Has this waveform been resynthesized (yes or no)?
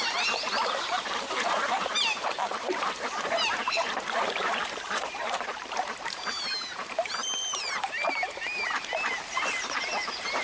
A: yes